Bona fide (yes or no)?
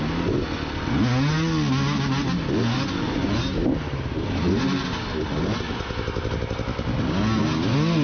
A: yes